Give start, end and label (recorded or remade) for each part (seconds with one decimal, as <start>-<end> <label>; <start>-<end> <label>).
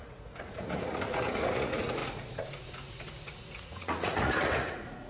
0.0-5.1 remade